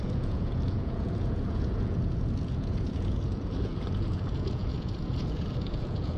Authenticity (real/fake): fake